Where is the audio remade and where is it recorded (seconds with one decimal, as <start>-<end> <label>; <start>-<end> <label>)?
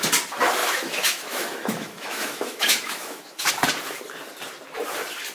0.0-0.6 recorded; 0.6-3.5 remade; 3.5-5.3 recorded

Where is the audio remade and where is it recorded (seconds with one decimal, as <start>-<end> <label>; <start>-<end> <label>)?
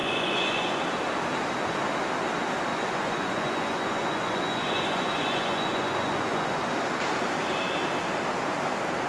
0.0-0.8 remade; 0.8-2.7 recorded; 2.7-6.6 remade; 6.6-9.1 recorded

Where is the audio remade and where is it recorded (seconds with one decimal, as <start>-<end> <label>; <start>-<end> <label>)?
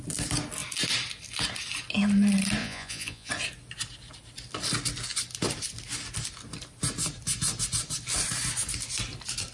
0.0-2.6 recorded; 2.6-3.3 remade; 3.3-9.5 recorded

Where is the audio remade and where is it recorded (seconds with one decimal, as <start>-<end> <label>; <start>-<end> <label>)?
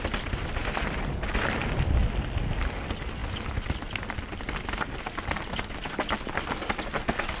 0.0-7.4 recorded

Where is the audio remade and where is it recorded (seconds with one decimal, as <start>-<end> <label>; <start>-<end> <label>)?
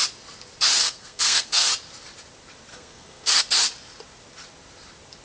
0.0-0.8 recorded; 0.8-1.7 remade; 1.7-2.7 recorded; 2.7-3.4 remade; 3.4-5.2 recorded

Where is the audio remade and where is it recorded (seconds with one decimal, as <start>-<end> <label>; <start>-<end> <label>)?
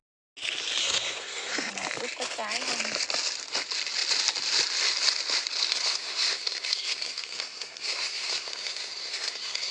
0.0-0.8 recorded; 0.8-1.7 remade; 1.7-5.7 recorded; 5.7-9.7 remade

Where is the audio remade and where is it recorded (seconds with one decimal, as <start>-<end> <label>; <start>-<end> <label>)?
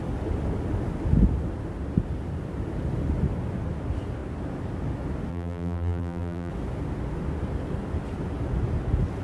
0.0-5.3 recorded; 5.3-6.5 remade; 6.5-9.2 recorded